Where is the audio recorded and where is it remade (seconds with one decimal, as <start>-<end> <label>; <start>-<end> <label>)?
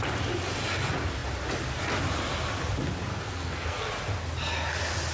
0.0-3.1 recorded; 3.1-3.9 remade; 3.9-5.1 recorded